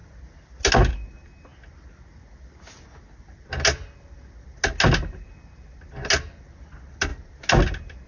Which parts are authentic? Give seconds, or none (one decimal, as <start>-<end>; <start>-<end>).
0.0-8.1